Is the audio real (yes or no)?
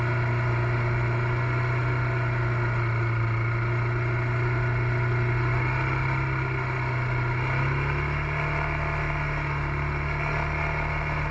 yes